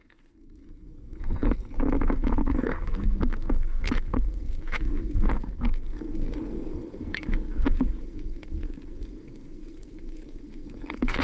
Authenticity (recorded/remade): remade